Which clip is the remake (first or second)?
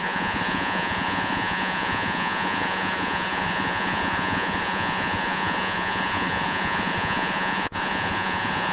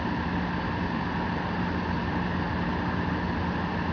first